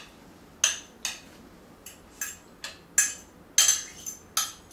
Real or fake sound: real